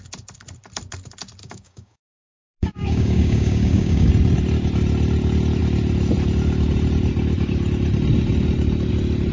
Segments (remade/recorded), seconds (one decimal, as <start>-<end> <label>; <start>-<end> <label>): 0.0-1.4 recorded; 1.4-4.1 remade; 4.1-9.3 recorded